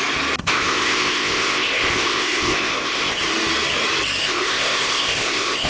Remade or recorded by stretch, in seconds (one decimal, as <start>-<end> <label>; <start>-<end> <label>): 0.0-0.4 recorded; 0.4-3.2 remade; 3.2-4.2 recorded; 4.2-5.7 remade